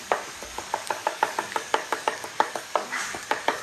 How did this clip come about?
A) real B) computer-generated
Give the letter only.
B